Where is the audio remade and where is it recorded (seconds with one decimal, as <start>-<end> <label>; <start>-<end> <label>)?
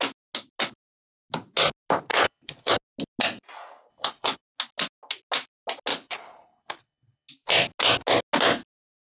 0.0-2.1 recorded; 2.1-2.7 remade; 2.7-3.9 recorded; 3.9-4.4 remade; 4.4-5.9 recorded; 5.9-7.3 remade; 7.3-9.1 recorded